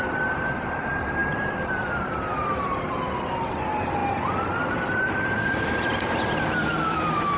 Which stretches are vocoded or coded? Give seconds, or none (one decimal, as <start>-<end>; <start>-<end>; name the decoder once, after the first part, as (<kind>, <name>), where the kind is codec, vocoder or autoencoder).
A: 0.0-4.0 (vocoder, BigVGAN v2); 4.7-7.4